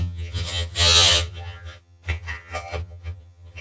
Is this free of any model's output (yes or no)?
no